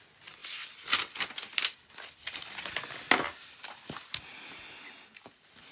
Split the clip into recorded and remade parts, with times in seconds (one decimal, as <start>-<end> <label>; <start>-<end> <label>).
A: 0.0-5.7 recorded